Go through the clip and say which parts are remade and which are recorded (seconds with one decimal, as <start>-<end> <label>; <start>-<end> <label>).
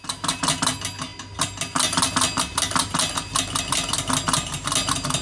0.0-5.2 recorded